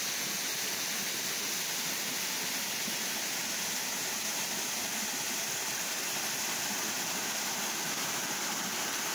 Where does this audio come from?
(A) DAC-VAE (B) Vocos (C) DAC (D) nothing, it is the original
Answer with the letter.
D